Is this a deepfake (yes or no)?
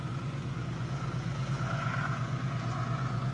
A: yes